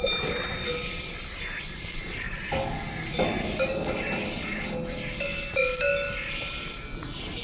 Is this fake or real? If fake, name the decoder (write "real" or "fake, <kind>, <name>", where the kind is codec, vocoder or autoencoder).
real